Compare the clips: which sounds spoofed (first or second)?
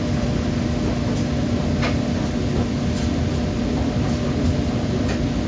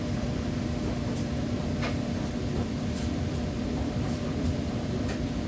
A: second